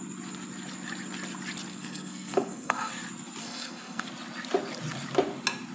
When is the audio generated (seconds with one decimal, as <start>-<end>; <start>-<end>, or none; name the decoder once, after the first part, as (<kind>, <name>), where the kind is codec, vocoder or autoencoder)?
1.7-2.9 (codec, SNAC); 3.4-4.1